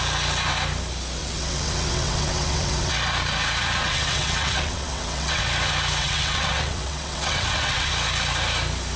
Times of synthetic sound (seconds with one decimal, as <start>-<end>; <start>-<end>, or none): 1.2-2.9; 3.8-5.4; 6.0-7.9